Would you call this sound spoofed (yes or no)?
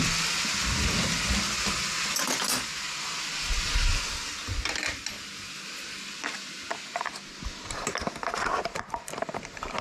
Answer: no